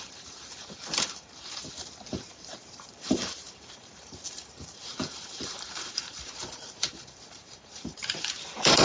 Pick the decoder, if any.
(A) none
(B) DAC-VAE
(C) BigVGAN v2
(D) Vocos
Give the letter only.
C